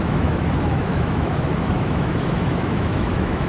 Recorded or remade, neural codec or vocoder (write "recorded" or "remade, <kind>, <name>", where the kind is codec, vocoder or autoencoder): remade, autoencoder, DAC-VAE